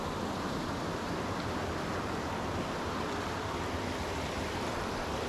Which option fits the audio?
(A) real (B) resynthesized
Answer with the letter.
A